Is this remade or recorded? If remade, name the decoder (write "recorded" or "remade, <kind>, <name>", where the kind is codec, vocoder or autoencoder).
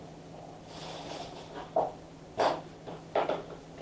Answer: recorded